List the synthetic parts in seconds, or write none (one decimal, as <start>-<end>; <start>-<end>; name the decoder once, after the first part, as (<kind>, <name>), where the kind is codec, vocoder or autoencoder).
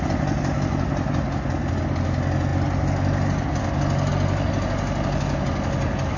none